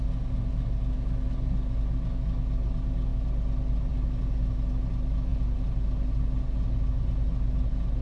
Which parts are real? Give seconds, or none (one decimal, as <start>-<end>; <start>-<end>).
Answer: 0.0-8.0